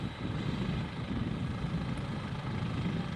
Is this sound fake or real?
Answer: real